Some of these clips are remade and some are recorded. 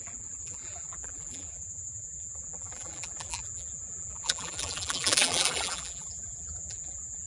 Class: remade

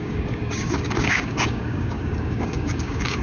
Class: remade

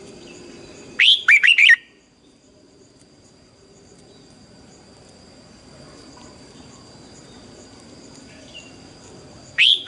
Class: remade